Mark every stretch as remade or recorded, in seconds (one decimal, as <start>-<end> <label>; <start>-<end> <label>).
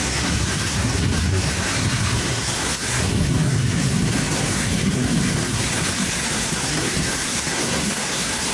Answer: 0.0-8.5 remade